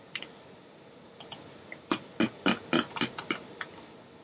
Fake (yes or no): no